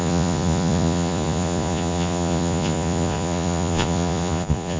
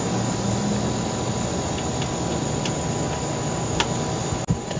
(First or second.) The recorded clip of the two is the second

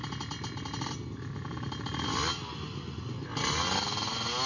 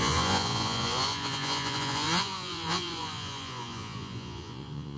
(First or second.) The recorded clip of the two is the first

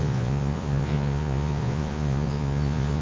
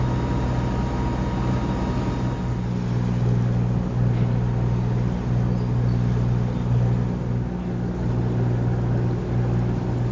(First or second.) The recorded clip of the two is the second